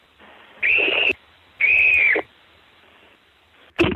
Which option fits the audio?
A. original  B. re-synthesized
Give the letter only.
A